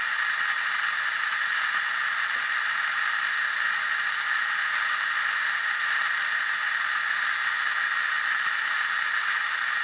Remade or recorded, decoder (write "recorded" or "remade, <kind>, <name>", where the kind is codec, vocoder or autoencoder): recorded